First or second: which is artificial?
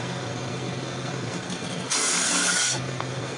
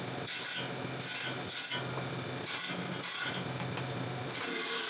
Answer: first